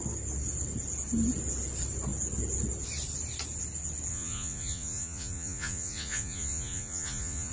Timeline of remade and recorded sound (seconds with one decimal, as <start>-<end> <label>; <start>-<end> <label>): 0.0-4.1 recorded; 4.1-7.5 remade